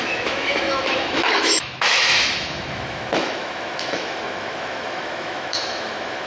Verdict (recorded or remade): remade